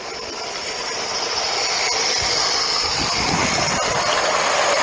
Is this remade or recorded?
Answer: recorded